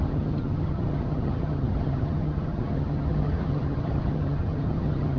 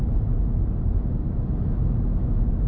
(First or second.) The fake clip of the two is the first